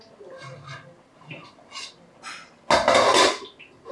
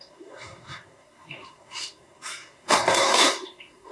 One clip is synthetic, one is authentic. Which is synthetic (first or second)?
second